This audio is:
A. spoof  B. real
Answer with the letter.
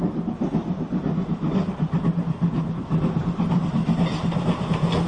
B